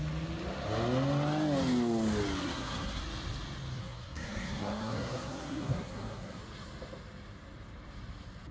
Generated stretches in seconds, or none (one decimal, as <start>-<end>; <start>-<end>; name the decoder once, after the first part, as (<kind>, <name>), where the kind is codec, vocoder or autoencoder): 2.4-3.0 (codec, SNAC); 3.8-6.4